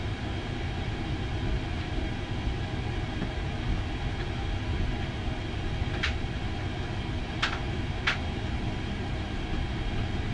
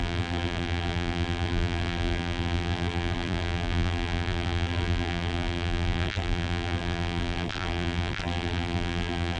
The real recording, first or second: first